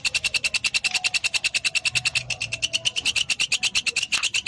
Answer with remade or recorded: recorded